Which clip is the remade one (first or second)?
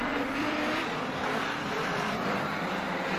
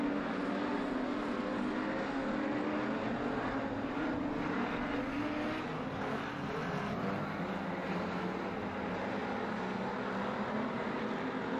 first